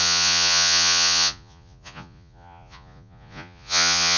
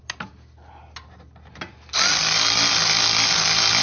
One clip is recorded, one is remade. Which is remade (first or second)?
first